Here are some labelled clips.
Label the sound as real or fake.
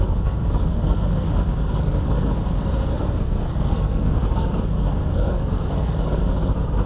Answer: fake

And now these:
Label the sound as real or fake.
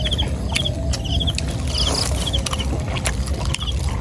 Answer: real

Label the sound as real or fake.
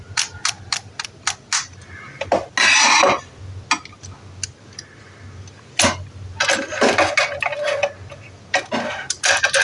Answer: real